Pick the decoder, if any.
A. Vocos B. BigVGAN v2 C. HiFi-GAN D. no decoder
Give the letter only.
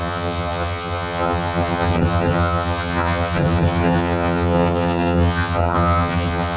C